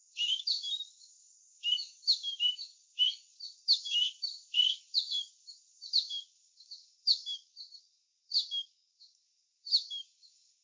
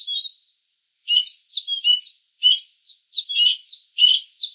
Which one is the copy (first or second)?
first